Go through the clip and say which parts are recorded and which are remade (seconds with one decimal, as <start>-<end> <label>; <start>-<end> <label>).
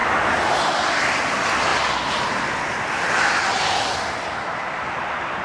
0.0-1.7 remade; 1.7-2.9 recorded; 2.9-5.4 remade